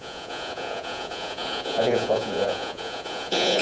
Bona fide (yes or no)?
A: no